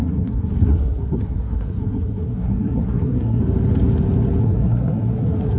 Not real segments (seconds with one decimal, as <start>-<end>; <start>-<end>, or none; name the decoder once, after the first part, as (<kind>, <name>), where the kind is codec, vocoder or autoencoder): 0.0-3.4 (codec, SNAC); 4.4-5.6